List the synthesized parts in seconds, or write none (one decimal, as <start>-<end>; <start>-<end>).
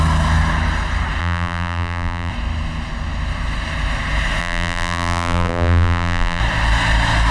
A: 1.2-2.3; 4.4-6.4